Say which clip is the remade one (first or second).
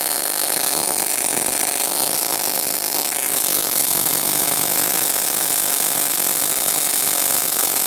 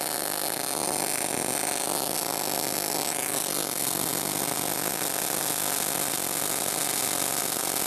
first